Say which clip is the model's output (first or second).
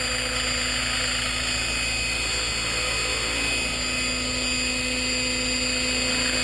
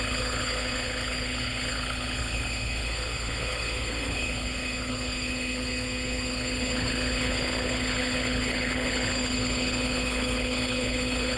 second